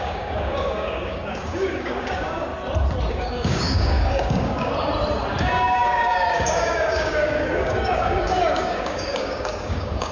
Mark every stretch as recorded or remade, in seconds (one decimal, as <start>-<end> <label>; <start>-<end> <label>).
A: 0.0-2.5 remade; 2.5-3.1 recorded; 3.1-4.7 remade; 4.7-5.4 recorded; 5.4-10.1 remade

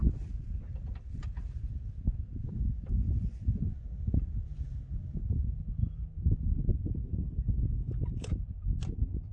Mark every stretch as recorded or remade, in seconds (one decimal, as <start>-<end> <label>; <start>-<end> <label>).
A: 0.0-6.7 recorded; 6.7-8.3 remade; 8.3-9.3 recorded

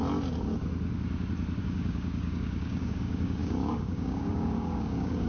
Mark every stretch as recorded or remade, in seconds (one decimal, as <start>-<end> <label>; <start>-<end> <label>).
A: 0.0-1.6 recorded; 1.6-5.3 remade

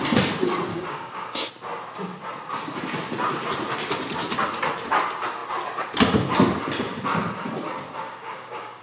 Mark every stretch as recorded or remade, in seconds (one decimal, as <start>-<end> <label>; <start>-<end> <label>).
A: 0.0-0.7 recorded; 0.7-1.5 remade; 1.5-8.0 recorded; 8.0-8.8 remade

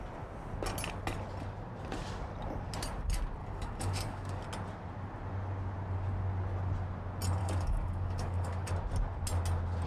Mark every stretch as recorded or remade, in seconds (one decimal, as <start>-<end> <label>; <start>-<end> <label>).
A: 0.0-3.4 recorded; 3.4-4.4 remade; 4.4-7.4 recorded; 7.4-8.7 remade; 8.7-9.9 recorded

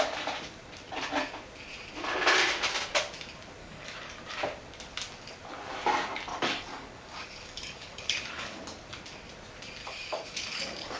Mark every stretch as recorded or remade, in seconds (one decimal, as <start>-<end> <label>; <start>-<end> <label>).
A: 0.0-3.6 recorded; 3.6-4.2 remade; 4.2-6.3 recorded; 6.3-8.6 remade; 8.6-9.8 recorded; 9.8-11.0 remade

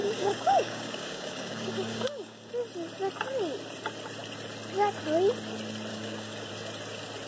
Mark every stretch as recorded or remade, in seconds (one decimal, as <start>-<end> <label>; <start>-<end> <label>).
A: 0.0-2.5 remade; 2.5-5.9 recorded; 5.9-6.5 remade; 6.5-7.3 recorded